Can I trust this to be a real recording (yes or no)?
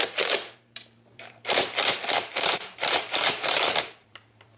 no